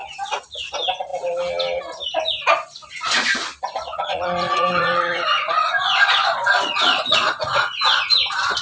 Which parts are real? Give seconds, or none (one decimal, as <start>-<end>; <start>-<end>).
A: 0.0-3.9; 7.7-8.6